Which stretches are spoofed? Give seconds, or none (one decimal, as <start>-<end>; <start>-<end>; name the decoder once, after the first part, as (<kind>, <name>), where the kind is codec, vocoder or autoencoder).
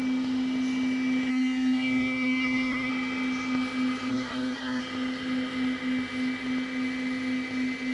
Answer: 1.3-2.9 (codec, SNAC); 4.1-4.8